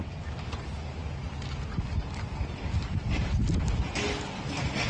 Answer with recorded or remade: recorded